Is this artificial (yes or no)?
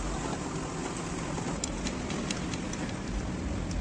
no